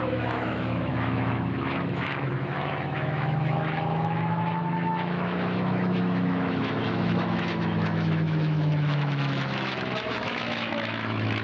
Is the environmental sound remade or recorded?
remade